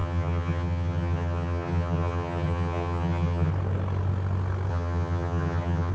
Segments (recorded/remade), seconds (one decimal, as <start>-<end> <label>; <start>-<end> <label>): 0.0-3.5 remade; 3.5-4.7 recorded; 4.7-5.9 remade